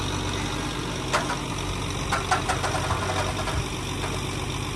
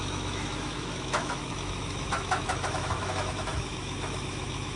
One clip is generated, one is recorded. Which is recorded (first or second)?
first